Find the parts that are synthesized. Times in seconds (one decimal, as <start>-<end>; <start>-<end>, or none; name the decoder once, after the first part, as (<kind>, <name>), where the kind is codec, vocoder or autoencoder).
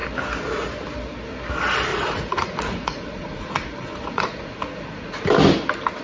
1.9-5.2 (vocoder, Vocos)